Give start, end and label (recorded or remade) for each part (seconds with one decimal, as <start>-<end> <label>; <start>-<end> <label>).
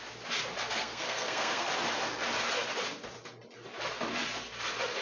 0.0-0.7 recorded; 0.7-1.7 remade; 1.7-5.0 recorded